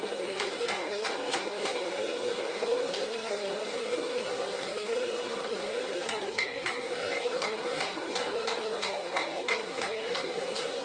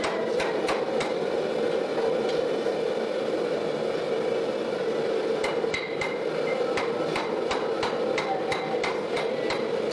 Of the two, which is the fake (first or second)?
first